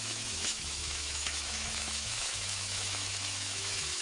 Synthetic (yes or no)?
yes